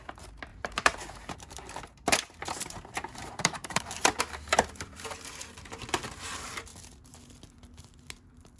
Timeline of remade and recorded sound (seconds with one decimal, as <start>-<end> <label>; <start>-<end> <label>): 0.0-0.5 recorded; 0.5-4.2 remade; 4.2-8.6 recorded